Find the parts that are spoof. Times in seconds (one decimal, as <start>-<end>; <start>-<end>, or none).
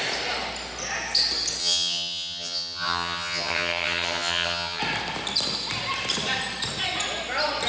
1.6-4.8